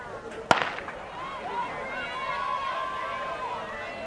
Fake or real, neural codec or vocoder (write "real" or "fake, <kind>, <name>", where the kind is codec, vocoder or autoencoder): real